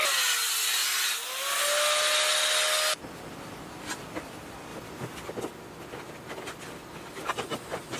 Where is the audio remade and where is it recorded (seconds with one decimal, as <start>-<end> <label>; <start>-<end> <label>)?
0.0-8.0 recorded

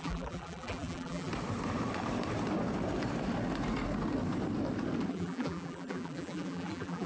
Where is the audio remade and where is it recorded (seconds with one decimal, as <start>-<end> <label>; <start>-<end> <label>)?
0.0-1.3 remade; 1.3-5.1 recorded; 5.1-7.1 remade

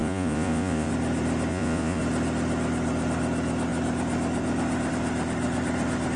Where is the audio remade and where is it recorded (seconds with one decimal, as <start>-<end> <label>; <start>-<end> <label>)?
0.0-0.9 remade; 0.9-1.5 recorded; 1.5-2.0 remade; 2.0-6.2 recorded

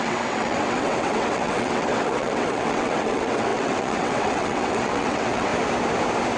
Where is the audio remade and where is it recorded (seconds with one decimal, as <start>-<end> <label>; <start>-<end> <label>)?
0.0-5.5 remade; 5.5-6.4 recorded

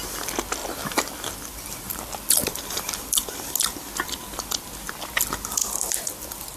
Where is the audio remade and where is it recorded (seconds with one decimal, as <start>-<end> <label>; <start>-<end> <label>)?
0.0-0.6 recorded; 0.6-4.6 remade; 4.6-5.6 recorded; 5.6-6.6 remade

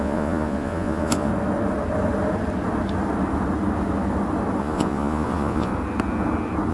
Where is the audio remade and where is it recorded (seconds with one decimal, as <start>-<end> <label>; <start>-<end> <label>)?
0.0-1.3 remade; 1.3-4.6 recorded; 4.6-5.7 remade; 5.7-6.7 recorded